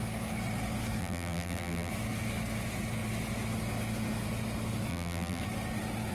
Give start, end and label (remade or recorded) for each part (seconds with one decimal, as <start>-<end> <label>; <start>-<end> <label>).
0.0-1.0 recorded; 1.0-1.9 remade; 1.9-4.9 recorded; 4.9-5.4 remade; 5.4-6.1 recorded